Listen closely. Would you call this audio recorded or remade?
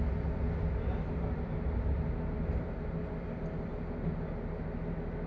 recorded